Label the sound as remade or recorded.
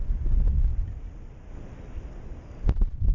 recorded